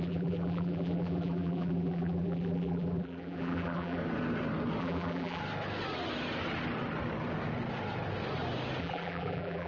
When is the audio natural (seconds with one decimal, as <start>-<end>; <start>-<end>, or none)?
4.0-4.8; 5.4-8.8